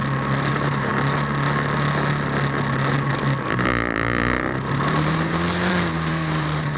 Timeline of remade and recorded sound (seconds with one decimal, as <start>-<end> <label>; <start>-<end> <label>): 0.0-0.5 recorded; 0.5-0.9 remade; 0.9-4.7 recorded; 4.7-6.8 remade